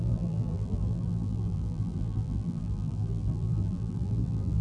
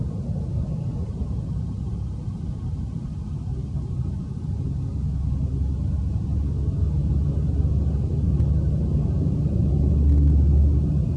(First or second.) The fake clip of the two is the first